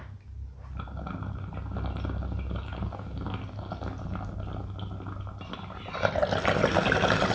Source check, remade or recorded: recorded